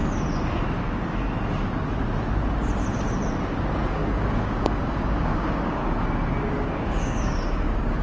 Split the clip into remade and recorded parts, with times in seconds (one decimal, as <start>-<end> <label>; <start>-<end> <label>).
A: 0.0-3.9 recorded; 3.9-5.8 remade; 5.8-6.6 recorded; 6.6-8.0 remade